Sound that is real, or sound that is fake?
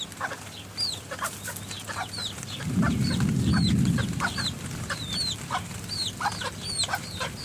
real